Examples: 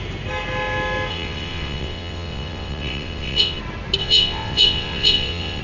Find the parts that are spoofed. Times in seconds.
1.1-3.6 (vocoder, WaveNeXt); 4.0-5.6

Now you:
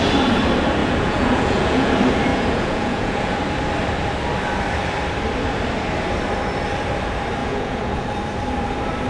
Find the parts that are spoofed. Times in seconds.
0.8-1.9 (vocoder, Vocos); 2.3-3.4; 7.4-8.0

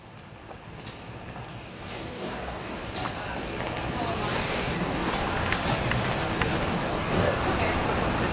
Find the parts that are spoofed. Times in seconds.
1.5-2.8 (codec, DAC); 4.3-5.1; 6.8-7.4

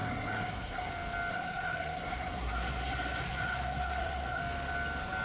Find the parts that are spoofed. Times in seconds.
0.0-0.9 (codec, SNAC); 1.3-4.4